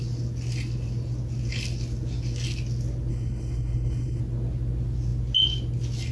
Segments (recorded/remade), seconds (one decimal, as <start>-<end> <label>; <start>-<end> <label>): 0.0-3.1 recorded; 3.1-4.2 remade; 4.2-6.1 recorded